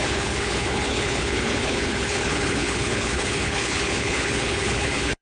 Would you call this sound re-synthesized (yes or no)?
yes